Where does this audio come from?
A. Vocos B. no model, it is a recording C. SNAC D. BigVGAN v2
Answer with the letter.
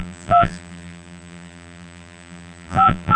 D